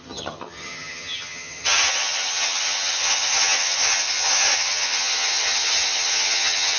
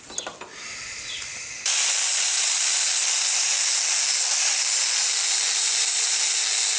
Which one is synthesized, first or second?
first